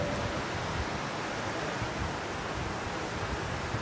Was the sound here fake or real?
real